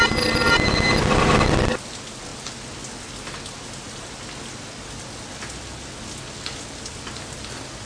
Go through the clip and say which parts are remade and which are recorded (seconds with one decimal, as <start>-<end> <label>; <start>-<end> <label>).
0.0-7.9 recorded